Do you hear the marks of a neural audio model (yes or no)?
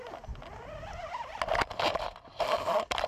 no